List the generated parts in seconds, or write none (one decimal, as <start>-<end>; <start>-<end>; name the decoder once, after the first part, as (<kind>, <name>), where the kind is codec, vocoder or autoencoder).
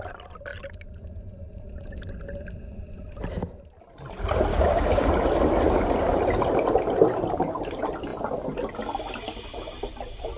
4.5-5.1 (codec, DAC)